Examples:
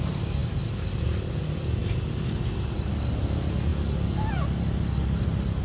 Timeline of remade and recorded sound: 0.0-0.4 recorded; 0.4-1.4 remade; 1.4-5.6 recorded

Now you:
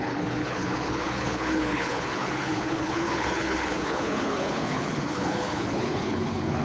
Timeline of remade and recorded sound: 0.0-6.6 remade

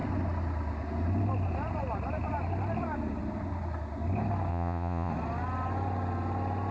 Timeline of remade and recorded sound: 0.0-4.5 recorded; 4.5-5.1 remade; 5.1-6.7 recorded

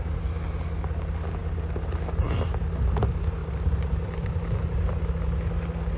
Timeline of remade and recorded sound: 0.0-3.4 recorded; 3.4-4.1 remade; 4.1-6.0 recorded

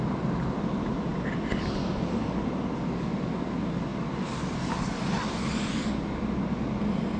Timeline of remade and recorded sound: 0.0-7.2 recorded

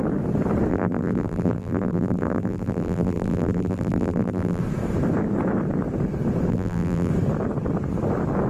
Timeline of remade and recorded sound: 0.0-0.7 recorded; 0.7-4.6 remade; 4.6-6.5 recorded; 6.5-7.1 remade; 7.1-8.5 recorded

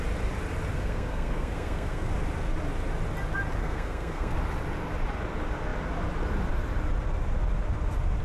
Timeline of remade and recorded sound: 0.0-0.7 recorded; 0.7-2.1 remade; 2.1-3.6 recorded; 3.6-4.4 remade; 4.4-8.2 recorded

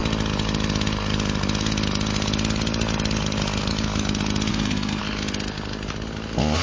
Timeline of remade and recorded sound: 0.0-4.5 recorded; 4.5-5.0 remade; 5.0-6.6 recorded